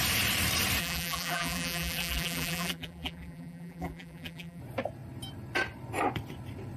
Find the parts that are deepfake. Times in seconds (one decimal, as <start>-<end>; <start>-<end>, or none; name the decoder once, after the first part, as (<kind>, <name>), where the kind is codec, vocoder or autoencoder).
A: 0.8-4.6 (vocoder, BigVGAN v2)